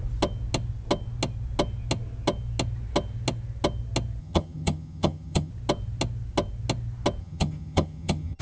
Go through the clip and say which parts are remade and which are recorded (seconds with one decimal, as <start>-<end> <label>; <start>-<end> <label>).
0.0-4.2 recorded; 4.2-5.5 remade; 5.5-7.2 recorded; 7.2-8.4 remade